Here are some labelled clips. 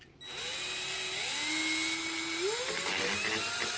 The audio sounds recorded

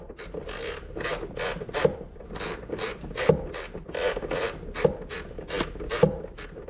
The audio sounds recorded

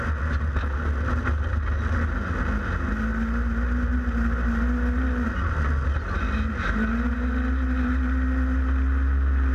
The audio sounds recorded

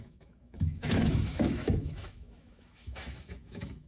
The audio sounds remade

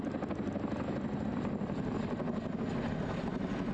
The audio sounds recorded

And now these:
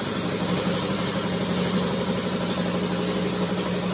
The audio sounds recorded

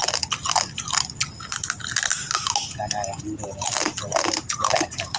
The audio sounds recorded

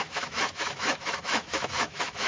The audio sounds remade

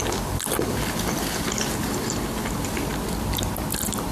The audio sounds recorded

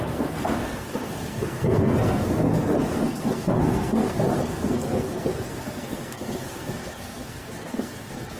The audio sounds remade